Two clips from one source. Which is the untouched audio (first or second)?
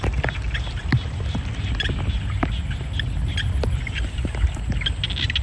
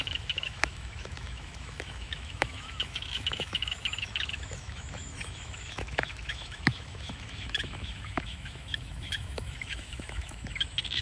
first